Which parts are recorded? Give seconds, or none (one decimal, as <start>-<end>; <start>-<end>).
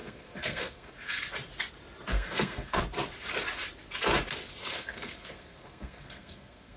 0.9-2.1; 2.8-4.6